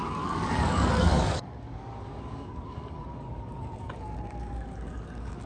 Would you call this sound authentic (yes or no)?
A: no